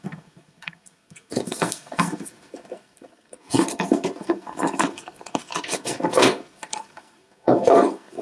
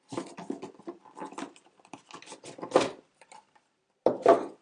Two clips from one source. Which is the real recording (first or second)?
second